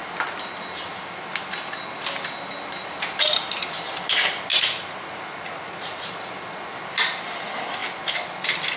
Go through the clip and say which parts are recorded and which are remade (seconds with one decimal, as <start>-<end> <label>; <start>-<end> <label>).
0.0-4.5 recorded; 4.5-6.1 remade; 6.1-8.8 recorded